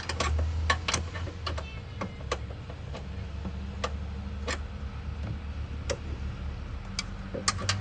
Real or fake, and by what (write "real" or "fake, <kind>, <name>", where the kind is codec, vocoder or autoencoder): real